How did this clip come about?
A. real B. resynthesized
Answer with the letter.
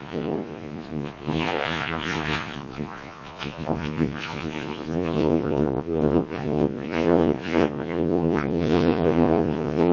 B